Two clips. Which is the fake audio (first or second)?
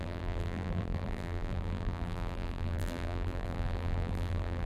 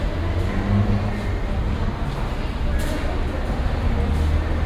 first